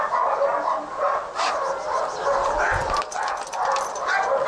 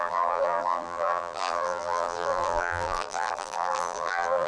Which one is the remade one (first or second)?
second